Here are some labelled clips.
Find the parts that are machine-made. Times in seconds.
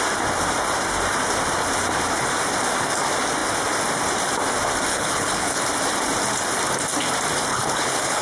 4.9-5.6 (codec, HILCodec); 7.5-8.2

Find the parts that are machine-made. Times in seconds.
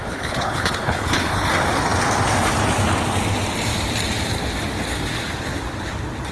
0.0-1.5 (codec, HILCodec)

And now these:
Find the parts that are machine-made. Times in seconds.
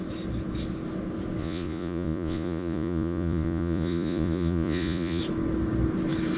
1.4-5.2 (vocoder, Vocos)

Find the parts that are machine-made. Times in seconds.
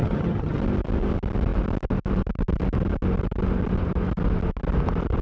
0.0-0.6 (vocoder, HiFi-GAN)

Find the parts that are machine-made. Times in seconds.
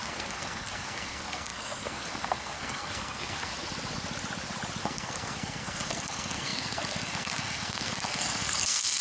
0.0-3.5 (codec, SNAC); 4.8-9.0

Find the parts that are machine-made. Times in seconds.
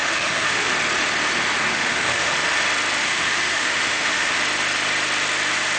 0.0-0.7 (autoencoder, DAC-VAE); 1.7-2.3; 3.0-4.4